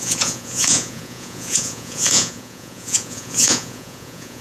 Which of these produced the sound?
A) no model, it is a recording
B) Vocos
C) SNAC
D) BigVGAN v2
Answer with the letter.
B